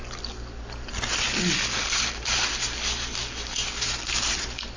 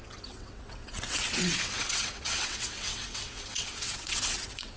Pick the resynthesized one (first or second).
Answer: second